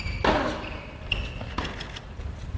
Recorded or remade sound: recorded